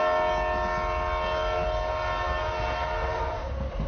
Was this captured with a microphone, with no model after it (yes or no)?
yes